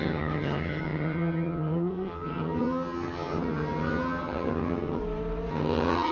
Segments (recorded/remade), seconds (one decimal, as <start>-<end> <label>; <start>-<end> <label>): 0.0-5.0 remade; 5.0-5.5 recorded; 5.5-6.1 remade